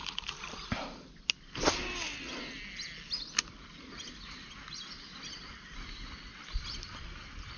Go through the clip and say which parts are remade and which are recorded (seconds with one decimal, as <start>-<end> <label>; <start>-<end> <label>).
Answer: 0.0-7.6 recorded